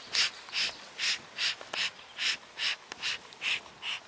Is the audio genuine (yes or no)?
yes